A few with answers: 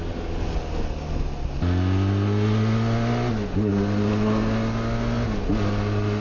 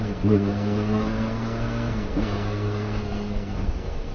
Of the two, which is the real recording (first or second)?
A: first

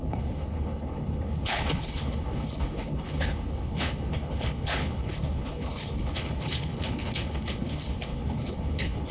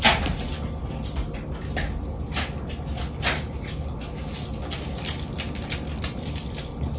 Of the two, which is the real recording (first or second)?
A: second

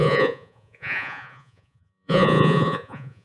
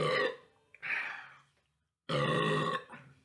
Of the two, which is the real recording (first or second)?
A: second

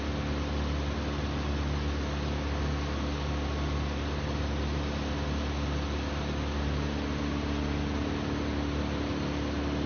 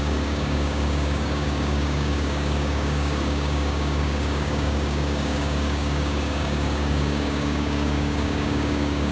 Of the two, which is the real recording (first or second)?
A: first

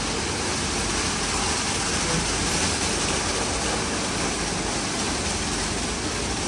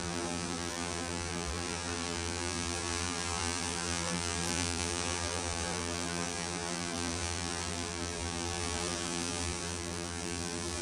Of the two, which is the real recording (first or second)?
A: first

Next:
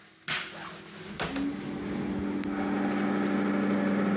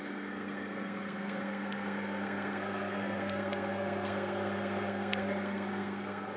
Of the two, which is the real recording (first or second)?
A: first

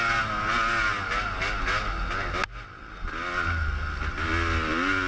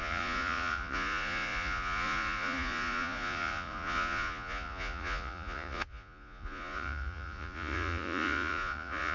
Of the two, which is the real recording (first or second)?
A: first